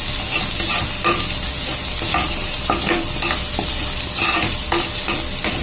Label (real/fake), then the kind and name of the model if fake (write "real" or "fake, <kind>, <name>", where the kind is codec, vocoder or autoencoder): real